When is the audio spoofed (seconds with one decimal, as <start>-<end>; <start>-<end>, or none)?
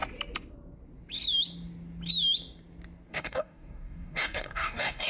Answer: 3.1-5.1